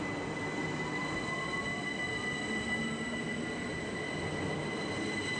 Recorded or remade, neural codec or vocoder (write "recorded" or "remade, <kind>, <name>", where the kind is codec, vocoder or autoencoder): recorded